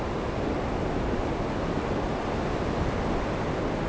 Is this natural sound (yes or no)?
yes